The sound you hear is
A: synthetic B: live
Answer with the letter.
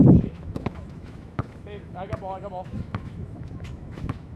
A